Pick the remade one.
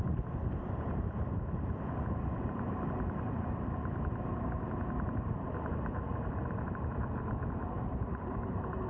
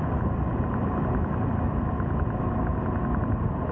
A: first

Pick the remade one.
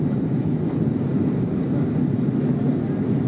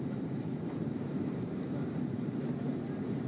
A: second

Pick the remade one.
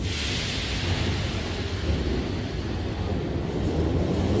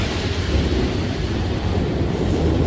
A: second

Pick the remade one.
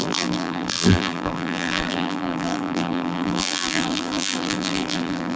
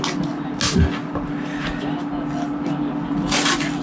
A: first